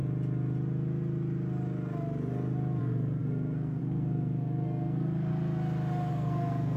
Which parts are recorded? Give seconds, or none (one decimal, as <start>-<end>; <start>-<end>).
0.0-2.8; 5.3-6.1